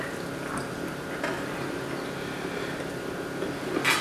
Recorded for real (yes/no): yes